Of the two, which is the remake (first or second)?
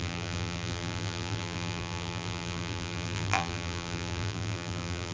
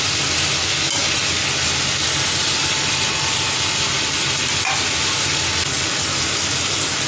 first